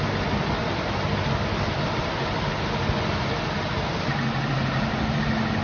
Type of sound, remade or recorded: recorded